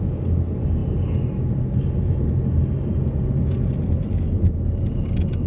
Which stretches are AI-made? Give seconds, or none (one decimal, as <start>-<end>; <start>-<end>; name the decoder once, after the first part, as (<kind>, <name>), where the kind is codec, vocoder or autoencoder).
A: none